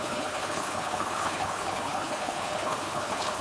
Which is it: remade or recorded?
remade